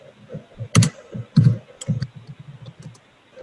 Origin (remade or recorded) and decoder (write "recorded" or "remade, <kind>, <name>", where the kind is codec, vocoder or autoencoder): recorded